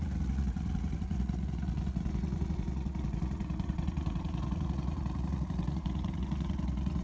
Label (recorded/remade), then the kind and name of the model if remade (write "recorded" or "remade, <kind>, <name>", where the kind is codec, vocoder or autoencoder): remade, vocoder, Vocos